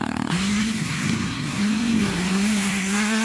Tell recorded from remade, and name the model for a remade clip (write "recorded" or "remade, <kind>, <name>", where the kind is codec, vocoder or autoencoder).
remade, codec, SNAC